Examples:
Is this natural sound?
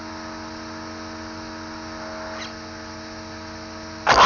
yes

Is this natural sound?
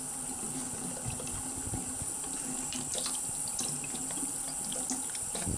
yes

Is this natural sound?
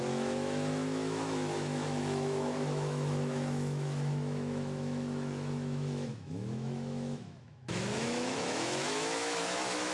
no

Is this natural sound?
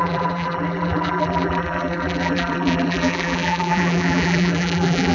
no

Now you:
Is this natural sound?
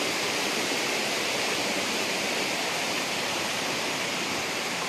no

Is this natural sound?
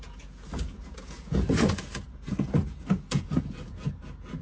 no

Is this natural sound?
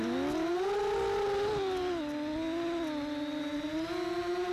yes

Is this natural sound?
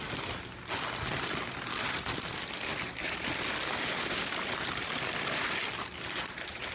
yes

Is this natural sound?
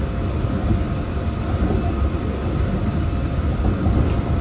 yes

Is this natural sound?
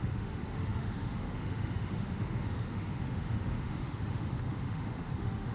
no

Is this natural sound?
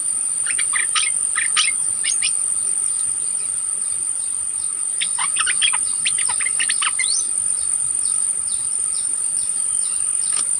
yes